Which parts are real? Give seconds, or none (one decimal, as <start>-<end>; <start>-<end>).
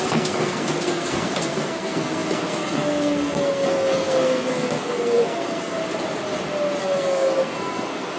5.8-6.8